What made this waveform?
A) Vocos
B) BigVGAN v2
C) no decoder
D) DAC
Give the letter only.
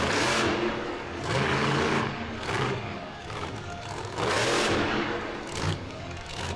D